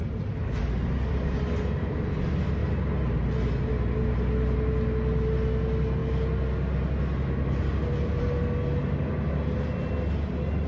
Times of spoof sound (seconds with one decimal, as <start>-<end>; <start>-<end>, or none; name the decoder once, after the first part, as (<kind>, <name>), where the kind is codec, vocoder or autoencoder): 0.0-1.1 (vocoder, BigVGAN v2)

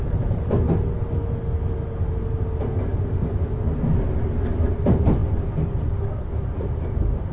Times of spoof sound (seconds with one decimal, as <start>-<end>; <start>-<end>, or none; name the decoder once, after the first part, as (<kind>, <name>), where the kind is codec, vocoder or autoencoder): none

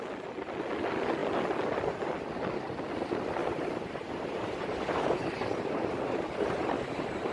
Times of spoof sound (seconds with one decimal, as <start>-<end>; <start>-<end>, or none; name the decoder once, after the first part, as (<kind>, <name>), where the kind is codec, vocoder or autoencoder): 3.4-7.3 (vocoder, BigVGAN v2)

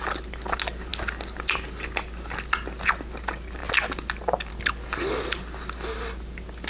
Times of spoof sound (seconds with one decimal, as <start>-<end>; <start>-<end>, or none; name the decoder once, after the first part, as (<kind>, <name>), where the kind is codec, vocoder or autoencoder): none

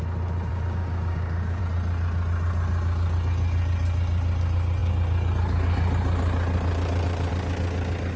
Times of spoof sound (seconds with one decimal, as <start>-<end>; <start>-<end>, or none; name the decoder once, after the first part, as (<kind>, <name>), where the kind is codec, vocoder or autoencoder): 0.5-1.6 (codec, DAC)

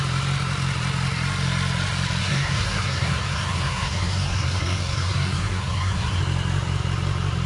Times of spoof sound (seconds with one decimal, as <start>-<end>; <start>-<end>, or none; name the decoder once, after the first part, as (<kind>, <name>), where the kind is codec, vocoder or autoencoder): 2.2-6.2 (codec, SNAC)

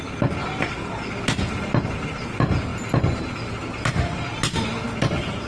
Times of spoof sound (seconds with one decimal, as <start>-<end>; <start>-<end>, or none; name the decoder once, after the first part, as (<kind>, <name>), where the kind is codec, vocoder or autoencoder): none

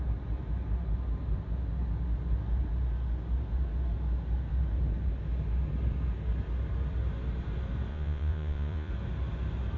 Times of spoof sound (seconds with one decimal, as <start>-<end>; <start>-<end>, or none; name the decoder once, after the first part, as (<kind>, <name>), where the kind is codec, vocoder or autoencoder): 7.9-8.9 (vocoder, Vocos)